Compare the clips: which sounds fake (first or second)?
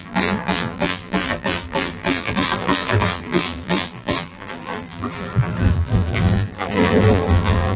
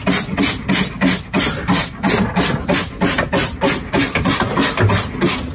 first